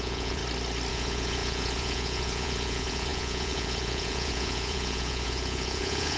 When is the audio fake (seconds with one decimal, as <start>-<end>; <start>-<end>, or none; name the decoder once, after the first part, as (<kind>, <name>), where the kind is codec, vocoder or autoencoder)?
0.0-0.4 (vocoder, Vocos); 0.9-6.2